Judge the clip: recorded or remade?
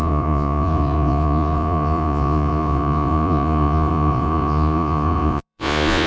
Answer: remade